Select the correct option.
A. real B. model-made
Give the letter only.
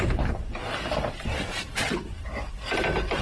A